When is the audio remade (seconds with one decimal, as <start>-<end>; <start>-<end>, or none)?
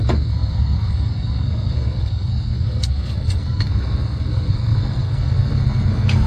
0.0-6.3